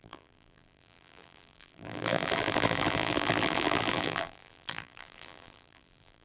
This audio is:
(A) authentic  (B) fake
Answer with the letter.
B